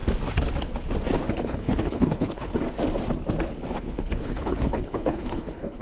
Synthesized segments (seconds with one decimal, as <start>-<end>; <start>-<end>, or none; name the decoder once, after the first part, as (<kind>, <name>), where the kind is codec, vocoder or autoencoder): 1.3-2.5 (codec, HILCodec); 3.8-5.8